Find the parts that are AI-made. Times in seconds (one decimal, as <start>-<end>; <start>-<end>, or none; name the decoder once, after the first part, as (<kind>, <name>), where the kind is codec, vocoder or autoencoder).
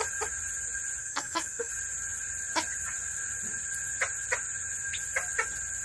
1.0-1.7 (codec, SNAC)